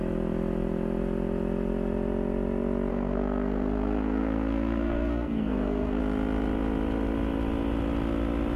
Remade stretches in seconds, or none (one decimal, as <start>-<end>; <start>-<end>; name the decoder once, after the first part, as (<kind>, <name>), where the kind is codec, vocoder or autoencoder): 2.9-6.0 (codec, SNAC)